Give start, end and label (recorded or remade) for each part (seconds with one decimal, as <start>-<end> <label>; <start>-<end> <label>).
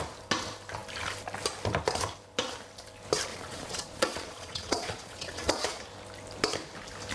0.0-3.3 recorded; 3.3-5.8 remade; 5.8-7.1 recorded